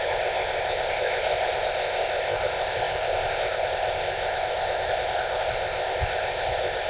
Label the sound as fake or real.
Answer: fake